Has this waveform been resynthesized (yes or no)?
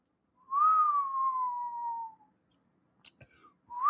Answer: no